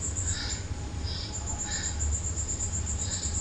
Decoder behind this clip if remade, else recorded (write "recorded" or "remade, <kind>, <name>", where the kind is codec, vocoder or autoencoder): recorded